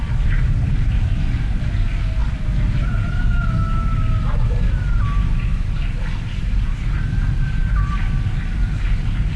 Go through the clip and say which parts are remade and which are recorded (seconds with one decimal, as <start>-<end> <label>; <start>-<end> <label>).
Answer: 0.0-9.4 recorded